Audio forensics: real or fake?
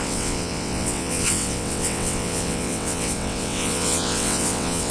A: fake